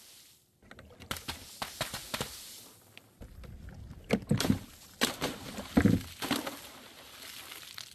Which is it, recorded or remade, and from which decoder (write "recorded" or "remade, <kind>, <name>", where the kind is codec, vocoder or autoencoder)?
recorded